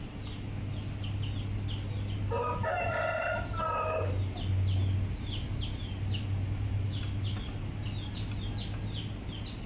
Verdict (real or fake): real